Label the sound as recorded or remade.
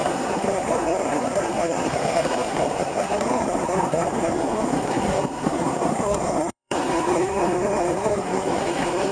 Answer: remade